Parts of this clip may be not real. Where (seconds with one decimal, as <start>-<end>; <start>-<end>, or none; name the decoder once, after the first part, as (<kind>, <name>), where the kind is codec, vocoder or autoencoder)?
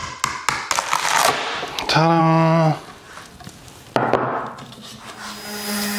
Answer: none